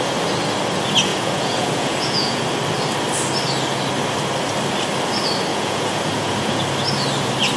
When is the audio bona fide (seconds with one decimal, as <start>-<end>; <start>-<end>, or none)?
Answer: 0.0-1.1; 2.4-5.5; 6.6-7.6